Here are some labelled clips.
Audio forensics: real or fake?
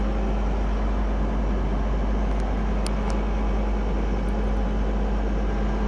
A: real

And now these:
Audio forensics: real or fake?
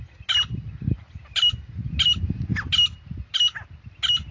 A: real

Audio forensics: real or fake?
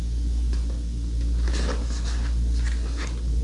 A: real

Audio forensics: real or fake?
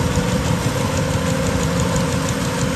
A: real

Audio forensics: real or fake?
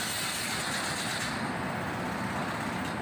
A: real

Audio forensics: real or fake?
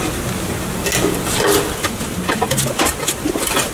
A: real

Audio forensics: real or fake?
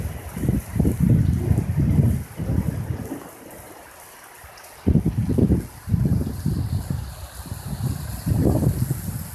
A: real